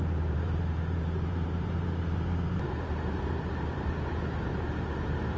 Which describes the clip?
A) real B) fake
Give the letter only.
B